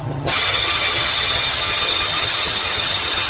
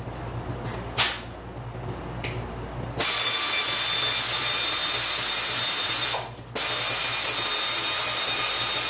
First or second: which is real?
second